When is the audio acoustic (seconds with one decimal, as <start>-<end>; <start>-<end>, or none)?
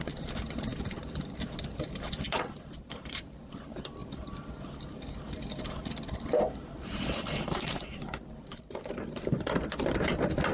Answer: none